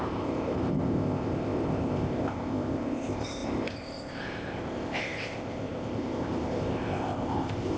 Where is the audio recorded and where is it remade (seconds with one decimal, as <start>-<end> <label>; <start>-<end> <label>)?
0.0-7.8 remade